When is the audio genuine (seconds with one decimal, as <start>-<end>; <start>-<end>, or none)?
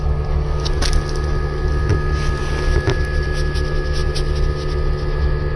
0.0-5.6